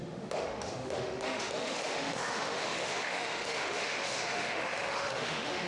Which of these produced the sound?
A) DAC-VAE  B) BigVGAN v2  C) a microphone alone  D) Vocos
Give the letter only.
A